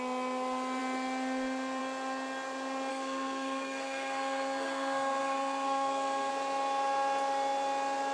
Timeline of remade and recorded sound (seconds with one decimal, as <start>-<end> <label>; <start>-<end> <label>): 0.0-2.9 recorded; 2.9-6.3 remade; 6.3-8.1 recorded